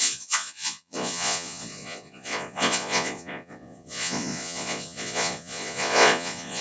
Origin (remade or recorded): remade